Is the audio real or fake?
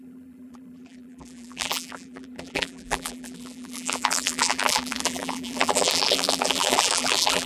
fake